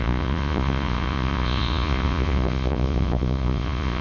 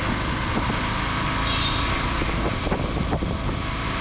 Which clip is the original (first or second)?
second